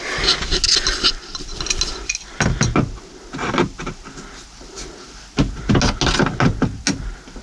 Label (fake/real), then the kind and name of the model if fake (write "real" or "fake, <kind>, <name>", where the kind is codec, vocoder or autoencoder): real